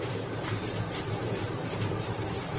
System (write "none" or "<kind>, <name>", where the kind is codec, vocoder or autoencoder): vocoder, BigVGAN v2